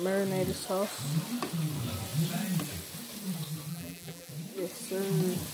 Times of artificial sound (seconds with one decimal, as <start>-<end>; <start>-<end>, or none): 3.7-4.3